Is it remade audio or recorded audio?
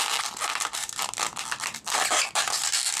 remade